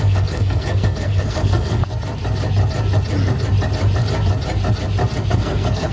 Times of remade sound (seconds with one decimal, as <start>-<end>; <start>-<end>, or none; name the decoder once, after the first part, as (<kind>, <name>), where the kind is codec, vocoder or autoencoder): 0.0-1.8 (codec, SNAC); 5.3-5.9

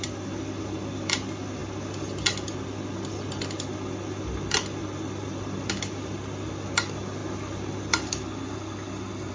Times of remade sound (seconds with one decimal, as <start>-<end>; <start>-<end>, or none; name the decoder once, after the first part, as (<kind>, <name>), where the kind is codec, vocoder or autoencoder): none

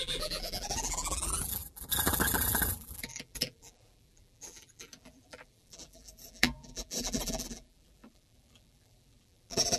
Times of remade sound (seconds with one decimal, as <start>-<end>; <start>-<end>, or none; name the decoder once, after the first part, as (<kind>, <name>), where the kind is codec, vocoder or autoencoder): 0.0-9.8 (vocoder, BigVGAN v2)